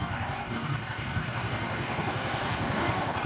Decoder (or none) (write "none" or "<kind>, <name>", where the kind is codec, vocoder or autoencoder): codec, DAC